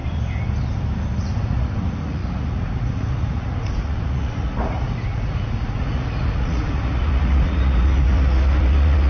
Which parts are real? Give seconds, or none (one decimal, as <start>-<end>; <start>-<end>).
0.0-1.2